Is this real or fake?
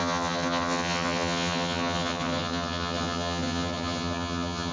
fake